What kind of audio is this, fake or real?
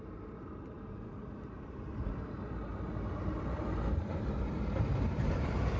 fake